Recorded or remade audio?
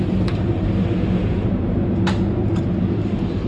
remade